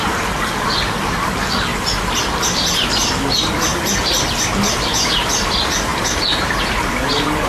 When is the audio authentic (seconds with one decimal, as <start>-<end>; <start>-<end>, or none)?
0.0-7.5